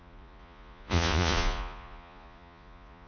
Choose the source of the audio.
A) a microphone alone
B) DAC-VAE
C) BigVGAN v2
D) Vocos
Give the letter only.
D